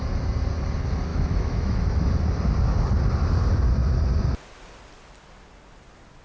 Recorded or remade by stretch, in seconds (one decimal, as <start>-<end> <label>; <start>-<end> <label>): 0.0-1.1 recorded; 1.1-2.1 remade; 2.1-6.2 recorded